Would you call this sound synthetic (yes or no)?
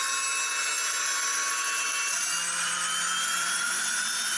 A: no